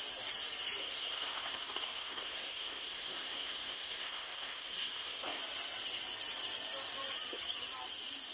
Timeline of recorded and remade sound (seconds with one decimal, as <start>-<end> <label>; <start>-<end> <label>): 0.0-0.8 recorded; 0.8-5.4 remade; 5.4-8.3 recorded